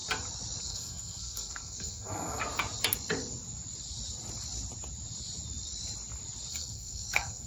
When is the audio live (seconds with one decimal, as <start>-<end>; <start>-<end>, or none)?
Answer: 0.0-0.6; 2.4-6.5